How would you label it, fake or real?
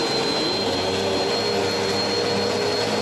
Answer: real